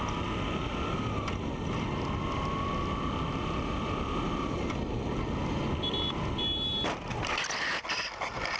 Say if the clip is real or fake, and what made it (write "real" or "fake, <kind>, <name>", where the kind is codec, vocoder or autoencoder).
real